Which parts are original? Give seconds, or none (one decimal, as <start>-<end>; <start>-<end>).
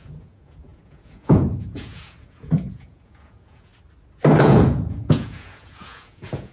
3.7-4.4